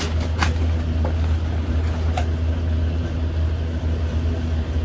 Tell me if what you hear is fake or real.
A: real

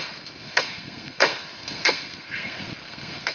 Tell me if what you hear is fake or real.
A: fake